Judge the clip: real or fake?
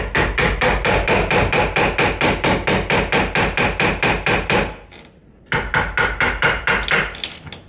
real